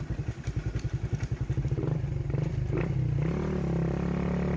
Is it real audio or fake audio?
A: real